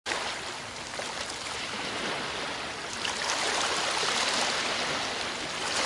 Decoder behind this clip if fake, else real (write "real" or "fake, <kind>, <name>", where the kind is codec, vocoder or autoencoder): real